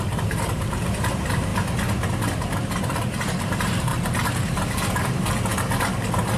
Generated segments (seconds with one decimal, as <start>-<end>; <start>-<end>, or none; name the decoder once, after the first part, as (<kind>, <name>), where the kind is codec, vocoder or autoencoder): 0.0-1.5 (vocoder, BigVGAN v2); 3.2-5.5